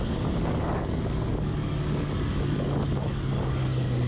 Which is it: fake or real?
fake